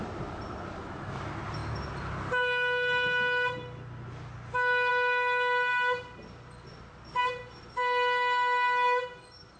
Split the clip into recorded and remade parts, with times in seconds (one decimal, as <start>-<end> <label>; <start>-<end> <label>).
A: 0.0-9.6 recorded